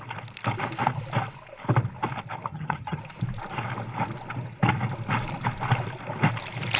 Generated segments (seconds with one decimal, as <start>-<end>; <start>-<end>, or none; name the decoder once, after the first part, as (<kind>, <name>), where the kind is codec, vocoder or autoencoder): 2.5-3.0 (vocoder, HiFi-GAN)